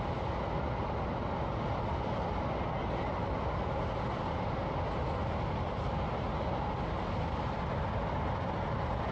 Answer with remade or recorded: recorded